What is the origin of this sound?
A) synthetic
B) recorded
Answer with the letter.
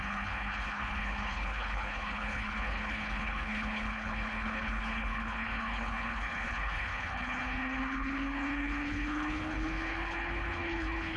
A